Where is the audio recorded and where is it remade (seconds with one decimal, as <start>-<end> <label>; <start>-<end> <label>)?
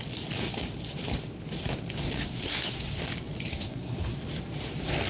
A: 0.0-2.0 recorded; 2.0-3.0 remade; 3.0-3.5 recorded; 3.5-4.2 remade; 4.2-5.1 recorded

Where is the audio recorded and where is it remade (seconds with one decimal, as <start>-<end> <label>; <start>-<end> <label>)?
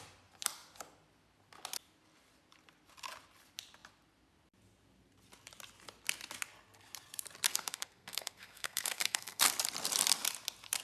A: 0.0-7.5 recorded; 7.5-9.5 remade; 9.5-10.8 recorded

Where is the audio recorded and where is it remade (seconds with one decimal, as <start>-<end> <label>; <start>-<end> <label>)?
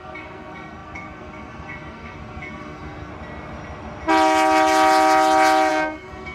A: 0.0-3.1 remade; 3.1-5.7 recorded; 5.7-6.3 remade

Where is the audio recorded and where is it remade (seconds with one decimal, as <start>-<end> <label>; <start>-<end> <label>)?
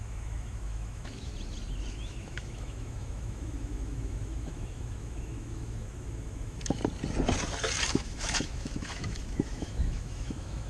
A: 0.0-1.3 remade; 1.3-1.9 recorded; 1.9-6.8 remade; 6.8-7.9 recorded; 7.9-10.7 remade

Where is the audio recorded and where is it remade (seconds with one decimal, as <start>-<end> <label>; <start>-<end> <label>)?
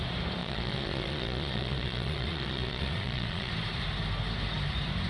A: 0.0-0.4 recorded; 0.4-3.5 remade; 3.5-5.1 recorded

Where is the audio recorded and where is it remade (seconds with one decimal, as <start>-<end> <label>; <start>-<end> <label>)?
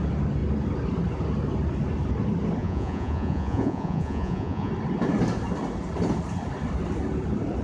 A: 0.0-2.6 recorded; 2.6-4.7 remade; 4.7-7.6 recorded